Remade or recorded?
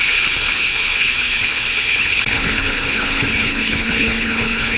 remade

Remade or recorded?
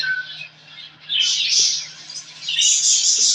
recorded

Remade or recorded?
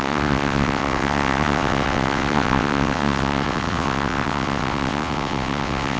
remade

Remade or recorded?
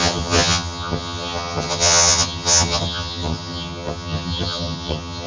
remade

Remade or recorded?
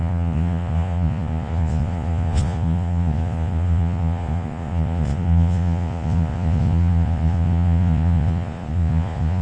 remade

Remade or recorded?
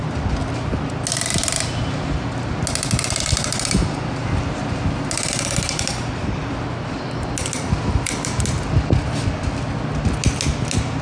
recorded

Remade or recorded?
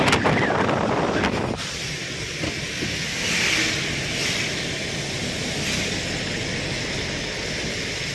recorded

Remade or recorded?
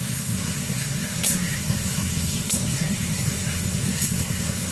remade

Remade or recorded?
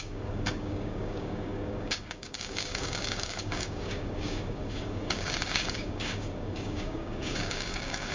remade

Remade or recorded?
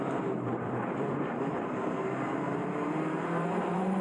remade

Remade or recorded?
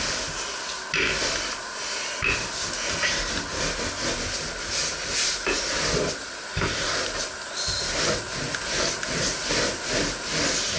recorded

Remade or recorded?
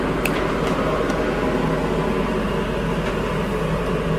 recorded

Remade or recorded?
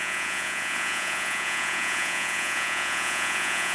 remade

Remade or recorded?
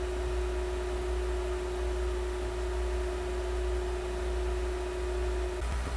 recorded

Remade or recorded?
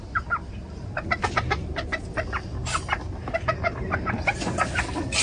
recorded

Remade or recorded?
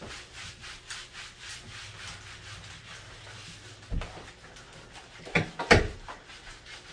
recorded